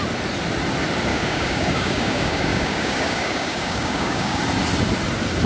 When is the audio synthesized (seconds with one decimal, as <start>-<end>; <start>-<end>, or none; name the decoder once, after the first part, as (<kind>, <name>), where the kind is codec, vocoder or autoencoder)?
1.1-4.4 (codec, DAC)